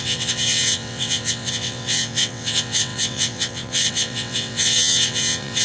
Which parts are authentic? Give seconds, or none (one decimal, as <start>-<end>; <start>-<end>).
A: none